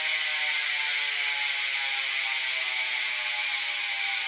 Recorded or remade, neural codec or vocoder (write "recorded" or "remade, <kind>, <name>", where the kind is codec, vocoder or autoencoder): recorded